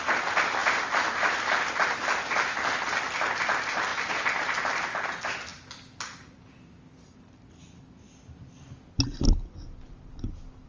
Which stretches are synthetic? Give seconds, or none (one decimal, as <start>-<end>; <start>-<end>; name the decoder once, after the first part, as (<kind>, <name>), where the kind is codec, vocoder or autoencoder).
none